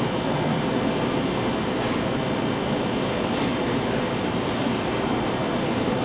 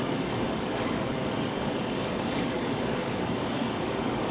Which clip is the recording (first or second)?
first